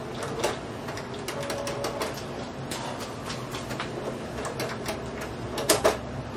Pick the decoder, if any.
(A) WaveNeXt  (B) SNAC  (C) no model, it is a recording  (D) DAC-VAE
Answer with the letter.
C